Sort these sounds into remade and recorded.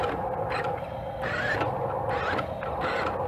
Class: recorded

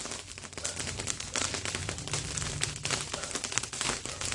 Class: recorded